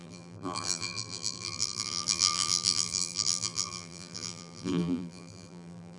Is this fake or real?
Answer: fake